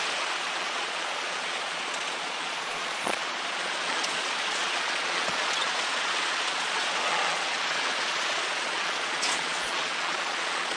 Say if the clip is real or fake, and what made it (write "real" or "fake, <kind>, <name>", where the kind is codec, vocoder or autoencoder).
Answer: fake, vocoder, Vocos